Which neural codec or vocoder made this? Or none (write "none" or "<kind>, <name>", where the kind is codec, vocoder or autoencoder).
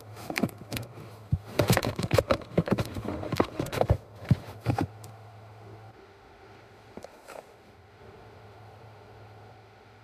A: autoencoder, DAC-VAE